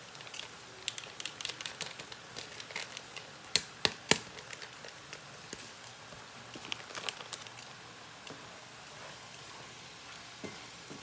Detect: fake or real real